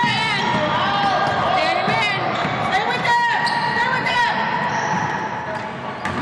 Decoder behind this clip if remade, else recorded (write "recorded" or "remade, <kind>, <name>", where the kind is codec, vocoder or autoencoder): recorded